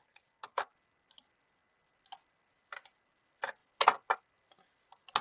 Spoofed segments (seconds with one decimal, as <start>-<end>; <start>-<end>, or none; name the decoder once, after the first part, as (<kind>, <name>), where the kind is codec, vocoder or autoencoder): none